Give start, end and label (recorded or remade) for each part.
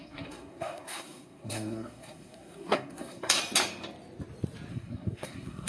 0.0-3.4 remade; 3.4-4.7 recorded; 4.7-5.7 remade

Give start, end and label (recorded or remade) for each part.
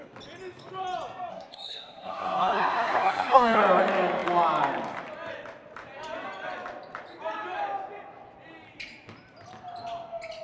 0.0-1.3 recorded; 1.3-3.6 remade; 3.6-10.4 recorded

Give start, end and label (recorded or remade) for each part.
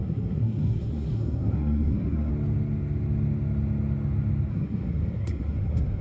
0.0-2.3 remade; 2.3-4.5 recorded; 4.5-6.0 remade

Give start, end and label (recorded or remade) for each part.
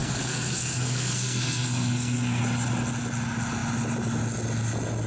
0.0-2.4 remade; 2.4-5.1 recorded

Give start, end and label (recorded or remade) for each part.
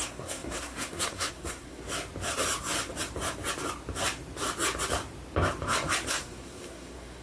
0.0-1.8 remade; 1.8-6.1 recorded; 6.1-7.2 remade